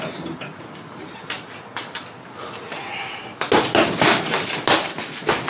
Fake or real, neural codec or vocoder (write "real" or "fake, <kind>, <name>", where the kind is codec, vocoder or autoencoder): real